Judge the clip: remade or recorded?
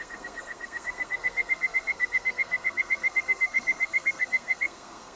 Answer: remade